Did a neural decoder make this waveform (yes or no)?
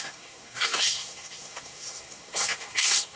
yes